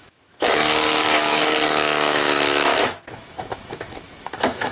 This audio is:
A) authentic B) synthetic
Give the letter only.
B